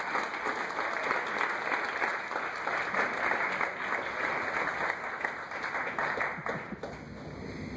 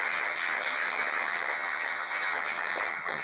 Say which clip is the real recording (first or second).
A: first